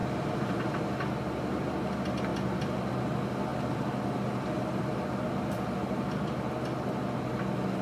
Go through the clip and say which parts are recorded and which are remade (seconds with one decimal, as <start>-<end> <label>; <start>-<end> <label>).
0.0-1.2 remade; 1.2-3.5 recorded; 3.5-6.0 remade; 6.0-7.8 recorded